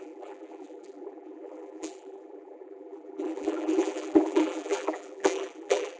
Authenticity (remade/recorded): remade